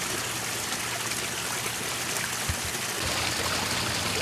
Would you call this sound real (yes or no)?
yes